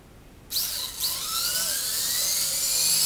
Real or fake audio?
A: real